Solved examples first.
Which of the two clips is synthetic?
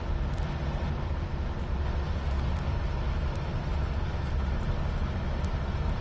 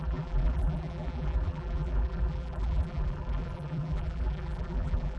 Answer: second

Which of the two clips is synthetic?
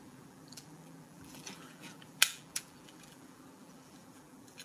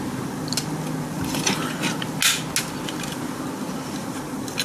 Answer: first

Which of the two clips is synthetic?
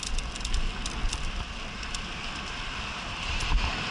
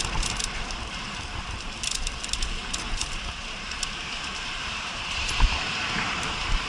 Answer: second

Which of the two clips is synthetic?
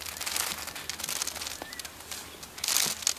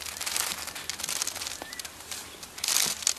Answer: second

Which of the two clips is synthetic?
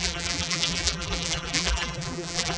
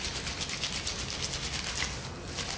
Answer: first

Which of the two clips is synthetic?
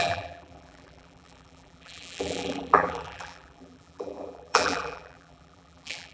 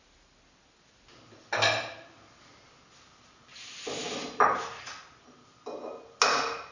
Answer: first